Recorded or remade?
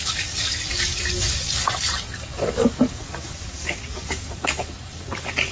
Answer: remade